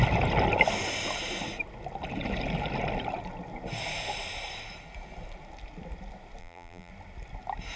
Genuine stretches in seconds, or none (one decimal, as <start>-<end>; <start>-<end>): 0.0-6.4; 6.9-7.8